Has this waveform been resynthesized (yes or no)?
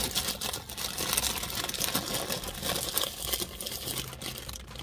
no